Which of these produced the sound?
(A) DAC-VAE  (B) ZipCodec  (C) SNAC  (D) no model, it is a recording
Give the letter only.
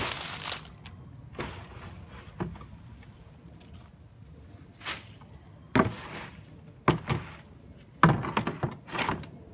D